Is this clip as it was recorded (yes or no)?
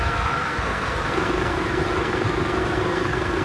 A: no